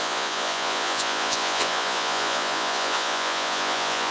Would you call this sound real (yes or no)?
no